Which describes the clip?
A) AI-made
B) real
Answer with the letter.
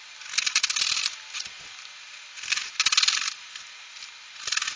B